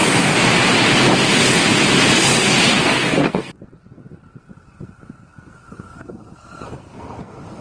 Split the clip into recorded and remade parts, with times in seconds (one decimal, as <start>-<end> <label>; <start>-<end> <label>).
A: 0.0-2.7 recorded; 2.7-7.6 remade